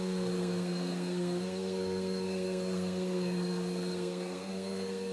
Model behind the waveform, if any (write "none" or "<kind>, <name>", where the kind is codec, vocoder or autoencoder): codec, SNAC